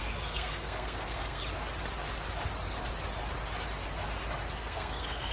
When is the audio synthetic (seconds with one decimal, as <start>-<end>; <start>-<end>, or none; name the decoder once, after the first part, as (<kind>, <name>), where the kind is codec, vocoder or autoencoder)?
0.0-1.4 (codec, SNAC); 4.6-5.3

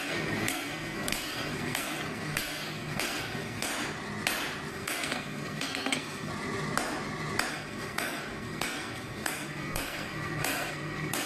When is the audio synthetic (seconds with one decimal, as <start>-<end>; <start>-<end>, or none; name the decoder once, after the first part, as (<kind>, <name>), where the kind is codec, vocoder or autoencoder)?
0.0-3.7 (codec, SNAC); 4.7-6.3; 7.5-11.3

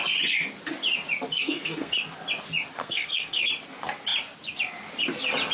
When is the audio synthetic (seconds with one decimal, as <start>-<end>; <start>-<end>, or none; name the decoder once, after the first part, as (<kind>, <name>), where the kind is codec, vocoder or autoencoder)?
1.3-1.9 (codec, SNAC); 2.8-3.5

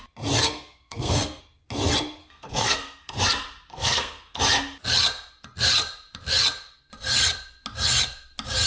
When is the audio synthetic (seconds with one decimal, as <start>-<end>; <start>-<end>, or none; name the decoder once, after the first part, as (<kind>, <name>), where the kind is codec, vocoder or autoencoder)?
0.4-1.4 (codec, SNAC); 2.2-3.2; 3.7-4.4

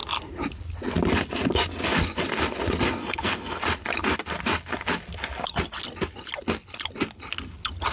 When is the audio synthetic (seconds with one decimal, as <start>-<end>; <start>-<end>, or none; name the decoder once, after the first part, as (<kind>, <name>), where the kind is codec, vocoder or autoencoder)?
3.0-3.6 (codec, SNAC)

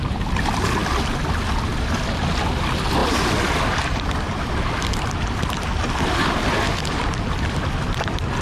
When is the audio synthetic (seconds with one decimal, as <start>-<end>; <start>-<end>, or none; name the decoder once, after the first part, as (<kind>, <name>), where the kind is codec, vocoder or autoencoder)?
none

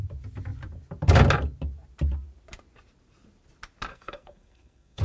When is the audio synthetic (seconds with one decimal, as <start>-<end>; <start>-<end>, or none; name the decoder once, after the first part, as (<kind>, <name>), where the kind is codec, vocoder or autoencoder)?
3.9-5.0 (codec, SNAC)

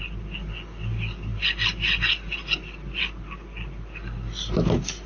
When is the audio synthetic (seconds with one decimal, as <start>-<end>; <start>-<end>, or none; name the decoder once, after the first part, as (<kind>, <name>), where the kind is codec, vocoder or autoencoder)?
none